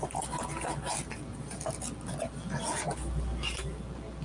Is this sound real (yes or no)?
yes